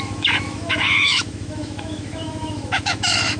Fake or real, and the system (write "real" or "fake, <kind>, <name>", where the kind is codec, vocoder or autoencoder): fake, autoencoder, DAC-VAE